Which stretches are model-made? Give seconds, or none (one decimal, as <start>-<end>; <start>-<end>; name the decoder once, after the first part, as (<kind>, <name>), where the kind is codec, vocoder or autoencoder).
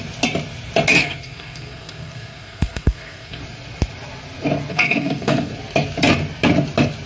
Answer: 1.0-3.4 (codec, SNAC); 4.7-5.5